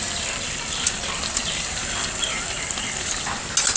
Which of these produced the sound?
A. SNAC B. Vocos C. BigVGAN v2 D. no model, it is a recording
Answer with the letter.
D